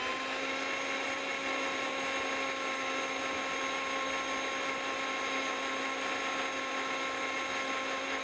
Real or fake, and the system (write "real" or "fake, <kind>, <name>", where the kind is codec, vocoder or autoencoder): real